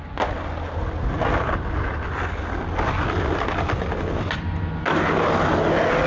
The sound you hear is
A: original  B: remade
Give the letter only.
A